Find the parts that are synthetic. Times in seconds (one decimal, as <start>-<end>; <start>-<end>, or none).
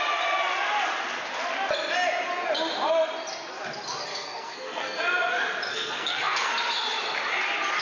4.1-5.0; 5.7-6.5